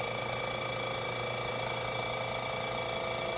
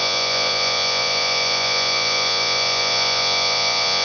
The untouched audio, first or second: first